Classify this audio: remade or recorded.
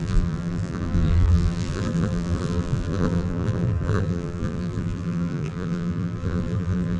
remade